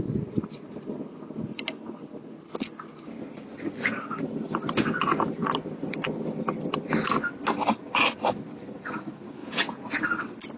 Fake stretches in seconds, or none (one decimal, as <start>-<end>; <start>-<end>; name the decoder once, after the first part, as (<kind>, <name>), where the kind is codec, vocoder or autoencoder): 9.4-9.9 (vocoder, Vocos)